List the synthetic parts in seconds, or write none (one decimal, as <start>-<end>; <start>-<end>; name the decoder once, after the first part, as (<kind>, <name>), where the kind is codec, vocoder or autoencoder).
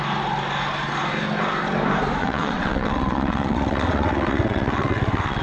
2.2-5.4 (vocoder, WaveNeXt)